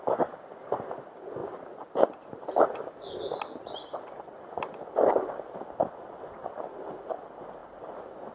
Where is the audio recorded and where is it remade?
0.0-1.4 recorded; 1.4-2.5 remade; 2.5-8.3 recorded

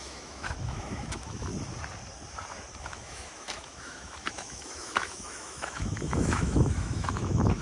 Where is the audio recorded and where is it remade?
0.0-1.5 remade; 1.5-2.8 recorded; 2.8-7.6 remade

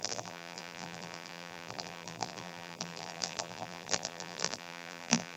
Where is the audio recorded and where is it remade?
0.0-5.4 remade